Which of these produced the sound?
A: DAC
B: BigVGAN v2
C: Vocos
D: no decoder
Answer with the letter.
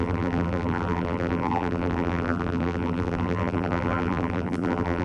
B